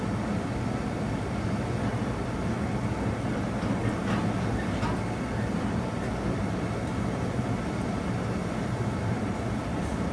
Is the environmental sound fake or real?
real